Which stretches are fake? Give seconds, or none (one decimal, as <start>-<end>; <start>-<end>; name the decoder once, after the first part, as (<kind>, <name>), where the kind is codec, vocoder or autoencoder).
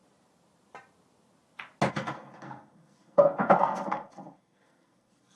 1.9-5.4 (codec, SNAC)